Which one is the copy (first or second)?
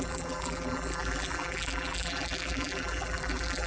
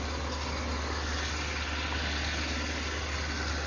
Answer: first